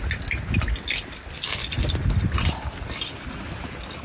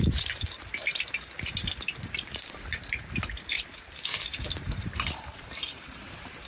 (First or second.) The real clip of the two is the first